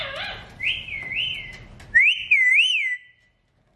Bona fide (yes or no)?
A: yes